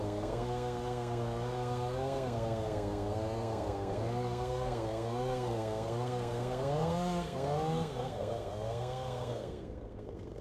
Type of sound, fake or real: fake